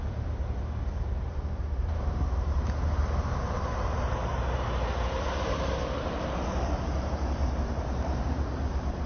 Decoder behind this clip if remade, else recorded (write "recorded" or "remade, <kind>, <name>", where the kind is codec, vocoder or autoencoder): remade, vocoder, BigVGAN v2